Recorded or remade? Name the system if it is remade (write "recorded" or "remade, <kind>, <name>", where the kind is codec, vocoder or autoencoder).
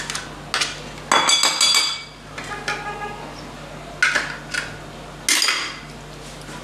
recorded